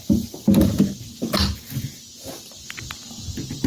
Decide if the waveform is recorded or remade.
recorded